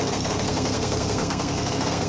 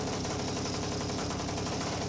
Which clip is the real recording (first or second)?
second